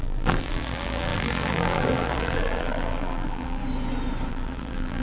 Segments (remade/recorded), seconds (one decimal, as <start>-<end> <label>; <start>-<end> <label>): 0.0-3.6 remade; 3.6-4.3 recorded; 4.3-5.0 remade